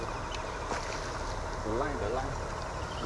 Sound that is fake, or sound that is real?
real